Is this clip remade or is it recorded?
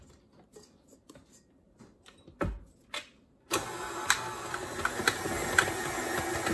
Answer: recorded